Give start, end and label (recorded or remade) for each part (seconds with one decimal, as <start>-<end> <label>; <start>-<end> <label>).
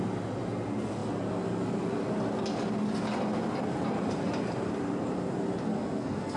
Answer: 0.0-5.7 recorded; 5.7-6.4 remade